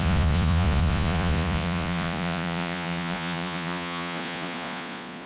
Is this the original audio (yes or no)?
no